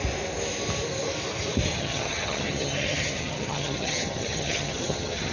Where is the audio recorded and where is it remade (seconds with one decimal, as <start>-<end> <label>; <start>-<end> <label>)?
0.0-1.7 recorded; 1.7-5.3 remade

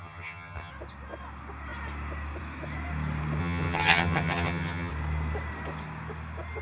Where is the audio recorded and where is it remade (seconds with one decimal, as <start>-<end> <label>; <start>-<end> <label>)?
0.0-0.7 remade; 0.7-3.4 recorded; 3.4-4.9 remade; 4.9-6.6 recorded

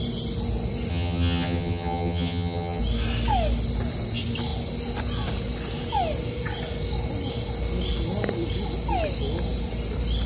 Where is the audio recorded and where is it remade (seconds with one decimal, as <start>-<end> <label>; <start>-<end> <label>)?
0.0-0.9 recorded; 0.9-2.8 remade; 2.8-10.3 recorded

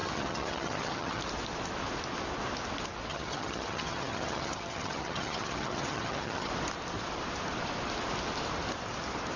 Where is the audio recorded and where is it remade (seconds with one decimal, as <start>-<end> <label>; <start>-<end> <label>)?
0.0-1.2 remade; 1.2-3.1 recorded; 3.1-6.5 remade; 6.5-9.4 recorded

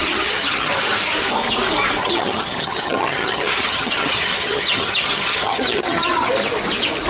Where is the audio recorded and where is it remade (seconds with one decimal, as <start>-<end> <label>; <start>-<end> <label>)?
0.0-0.8 remade; 0.8-2.0 recorded; 2.0-6.3 remade; 6.3-7.1 recorded

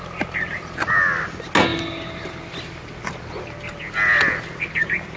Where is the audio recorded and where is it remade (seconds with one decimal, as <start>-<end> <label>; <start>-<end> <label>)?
0.0-5.2 recorded